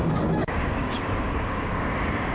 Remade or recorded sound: remade